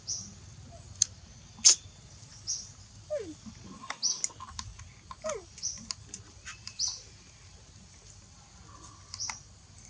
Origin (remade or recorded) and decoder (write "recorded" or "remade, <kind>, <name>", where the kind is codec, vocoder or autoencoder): recorded